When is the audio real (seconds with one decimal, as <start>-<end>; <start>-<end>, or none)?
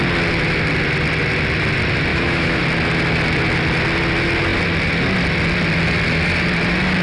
0.0-2.1; 2.6-7.0